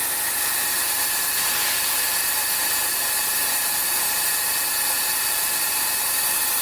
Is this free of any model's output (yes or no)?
yes